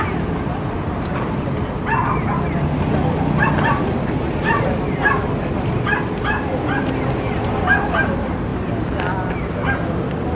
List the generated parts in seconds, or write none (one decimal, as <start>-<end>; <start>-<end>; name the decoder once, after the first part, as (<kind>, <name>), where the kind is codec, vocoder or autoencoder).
none